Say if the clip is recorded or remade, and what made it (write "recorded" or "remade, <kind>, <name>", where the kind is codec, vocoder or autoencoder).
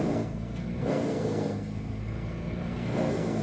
remade, codec, SNAC